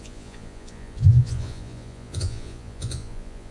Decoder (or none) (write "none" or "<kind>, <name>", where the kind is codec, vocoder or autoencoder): vocoder, Vocos